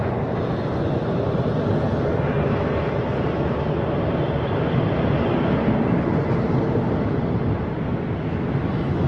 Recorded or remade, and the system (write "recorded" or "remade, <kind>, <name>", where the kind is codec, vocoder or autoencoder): recorded